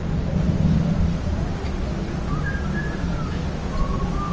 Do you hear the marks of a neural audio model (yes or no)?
no